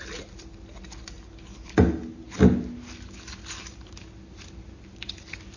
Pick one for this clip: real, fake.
real